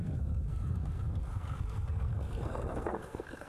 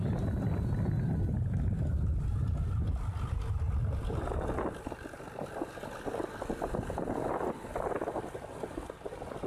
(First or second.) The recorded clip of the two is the second